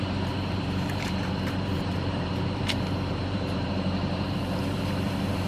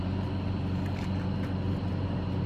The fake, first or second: first